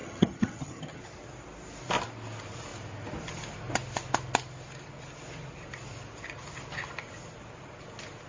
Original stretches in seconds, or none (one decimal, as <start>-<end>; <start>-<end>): 1.0-8.3